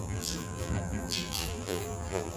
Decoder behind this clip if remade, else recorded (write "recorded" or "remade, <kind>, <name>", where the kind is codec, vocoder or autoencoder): remade, vocoder, BigVGAN v2